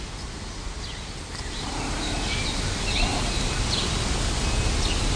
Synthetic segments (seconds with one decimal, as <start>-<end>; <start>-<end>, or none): none